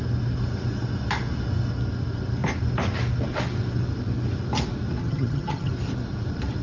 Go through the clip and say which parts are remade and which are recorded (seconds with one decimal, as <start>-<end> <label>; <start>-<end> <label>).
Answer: 0.0-5.0 recorded; 5.0-5.7 remade; 5.7-6.6 recorded